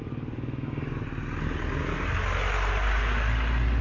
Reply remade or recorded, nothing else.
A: recorded